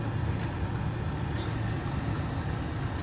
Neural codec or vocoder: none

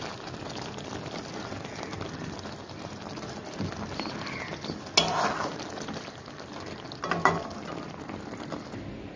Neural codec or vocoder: none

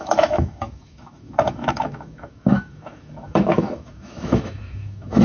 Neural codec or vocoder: autoencoder, DAC-VAE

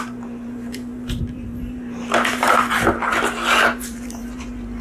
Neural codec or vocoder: vocoder, BigVGAN v2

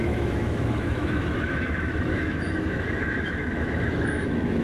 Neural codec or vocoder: autoencoder, DAC-VAE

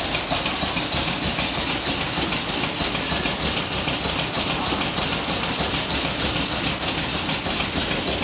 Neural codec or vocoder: none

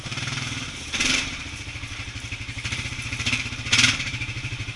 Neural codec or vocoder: vocoder, BigVGAN v2